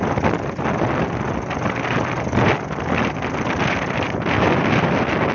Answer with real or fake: real